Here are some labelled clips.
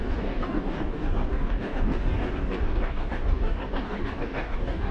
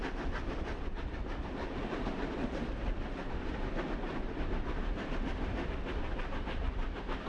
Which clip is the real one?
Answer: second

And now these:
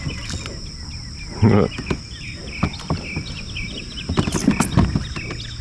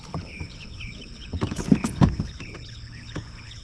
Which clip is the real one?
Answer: first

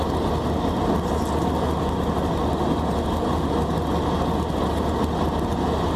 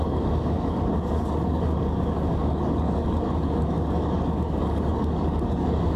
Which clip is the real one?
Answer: first